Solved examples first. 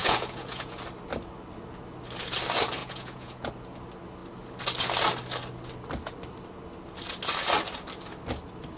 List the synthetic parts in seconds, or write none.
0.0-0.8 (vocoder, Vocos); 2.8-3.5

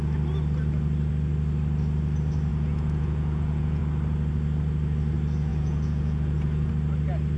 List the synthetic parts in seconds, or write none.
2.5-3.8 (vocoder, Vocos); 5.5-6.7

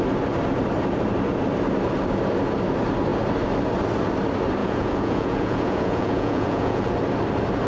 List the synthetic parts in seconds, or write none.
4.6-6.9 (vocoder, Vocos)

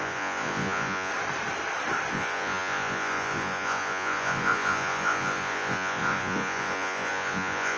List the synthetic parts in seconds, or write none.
0.0-1.1 (vocoder, Vocos); 2.1-7.8

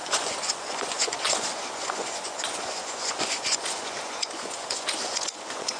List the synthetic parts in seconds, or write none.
0.0-5.8 (vocoder, Vocos)

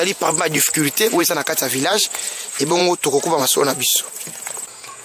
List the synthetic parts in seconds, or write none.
0.0-1.2 (vocoder, Vocos); 1.9-2.8; 3.4-3.9; 4.4-5.0